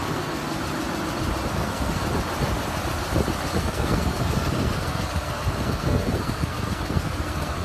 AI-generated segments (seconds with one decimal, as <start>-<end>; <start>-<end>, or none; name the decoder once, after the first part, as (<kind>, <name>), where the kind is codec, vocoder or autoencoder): 0.0-0.4 (codec, SNAC); 1.5-2.0; 3.6-7.6

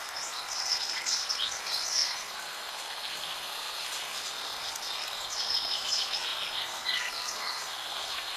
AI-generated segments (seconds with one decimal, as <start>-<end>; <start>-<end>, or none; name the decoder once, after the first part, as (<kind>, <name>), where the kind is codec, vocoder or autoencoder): 0.0-8.4 (codec, SNAC)

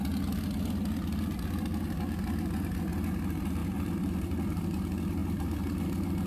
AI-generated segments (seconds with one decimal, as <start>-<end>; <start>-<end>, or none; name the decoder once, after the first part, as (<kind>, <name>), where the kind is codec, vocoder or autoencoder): 3.6-4.6 (vocoder, BigVGAN v2); 5.2-6.3

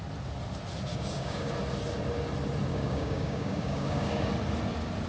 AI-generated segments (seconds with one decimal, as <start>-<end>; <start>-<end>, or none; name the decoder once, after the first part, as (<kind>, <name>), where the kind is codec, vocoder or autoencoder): 0.9-1.5 (codec, DAC); 2.7-4.3

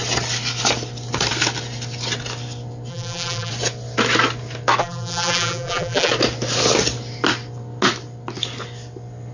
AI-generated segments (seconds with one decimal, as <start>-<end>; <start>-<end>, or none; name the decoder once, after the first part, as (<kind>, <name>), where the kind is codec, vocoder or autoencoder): 2.9-3.5 (vocoder, BigVGAN v2); 4.8-6.1